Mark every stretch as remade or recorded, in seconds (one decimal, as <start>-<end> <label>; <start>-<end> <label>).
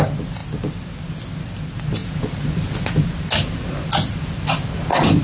0.0-5.2 recorded